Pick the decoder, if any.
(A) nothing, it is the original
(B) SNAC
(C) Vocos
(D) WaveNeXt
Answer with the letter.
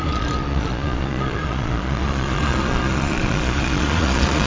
C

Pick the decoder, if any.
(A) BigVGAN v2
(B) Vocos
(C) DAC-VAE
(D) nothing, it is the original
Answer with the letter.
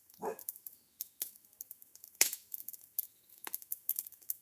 C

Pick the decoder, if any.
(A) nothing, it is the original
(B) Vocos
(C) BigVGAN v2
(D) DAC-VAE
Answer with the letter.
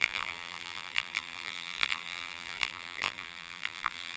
C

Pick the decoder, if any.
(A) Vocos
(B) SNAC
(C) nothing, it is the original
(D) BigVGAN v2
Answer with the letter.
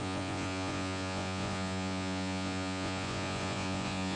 A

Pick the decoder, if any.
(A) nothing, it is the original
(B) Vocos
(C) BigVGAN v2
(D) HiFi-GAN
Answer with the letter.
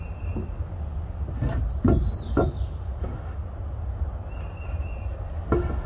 A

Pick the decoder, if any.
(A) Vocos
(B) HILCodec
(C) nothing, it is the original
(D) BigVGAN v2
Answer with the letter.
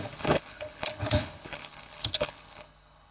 B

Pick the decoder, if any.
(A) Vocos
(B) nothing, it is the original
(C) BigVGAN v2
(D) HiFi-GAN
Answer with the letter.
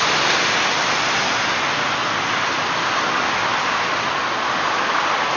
B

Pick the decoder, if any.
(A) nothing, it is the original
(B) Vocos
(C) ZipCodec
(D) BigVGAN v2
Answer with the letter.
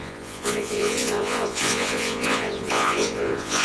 B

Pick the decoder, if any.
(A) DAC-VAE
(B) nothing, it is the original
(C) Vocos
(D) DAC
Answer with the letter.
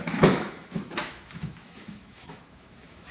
A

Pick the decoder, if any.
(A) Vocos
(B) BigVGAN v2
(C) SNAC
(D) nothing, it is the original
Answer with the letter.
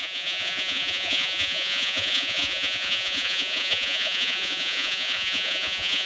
A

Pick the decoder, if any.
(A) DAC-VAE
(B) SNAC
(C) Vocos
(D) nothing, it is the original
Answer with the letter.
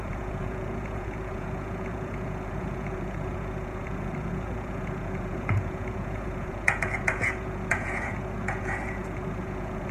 C